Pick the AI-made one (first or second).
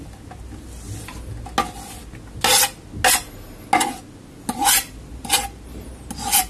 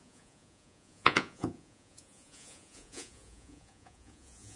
second